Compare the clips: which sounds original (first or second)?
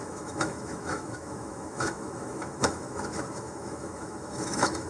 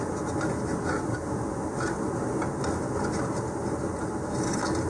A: second